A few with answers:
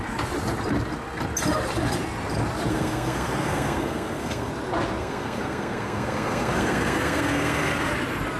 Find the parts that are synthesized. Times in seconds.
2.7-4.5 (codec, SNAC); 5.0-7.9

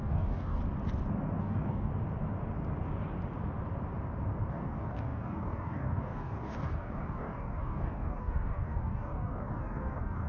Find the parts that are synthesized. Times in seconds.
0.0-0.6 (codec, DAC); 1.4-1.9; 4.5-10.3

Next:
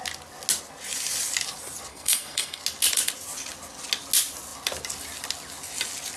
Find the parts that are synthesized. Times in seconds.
1.9-2.6 (codec, SNAC)

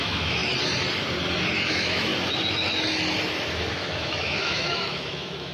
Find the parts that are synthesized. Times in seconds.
0.0-0.4 (autoencoder, DAC-VAE); 1.7-2.1; 3.7-5.5